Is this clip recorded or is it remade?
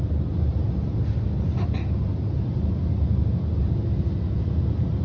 recorded